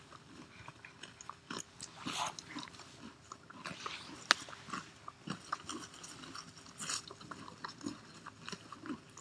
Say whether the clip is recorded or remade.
recorded